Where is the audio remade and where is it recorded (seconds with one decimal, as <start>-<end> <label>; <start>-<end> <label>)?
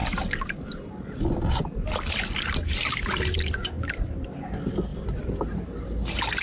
0.0-4.9 recorded; 4.9-5.8 remade; 5.8-6.4 recorded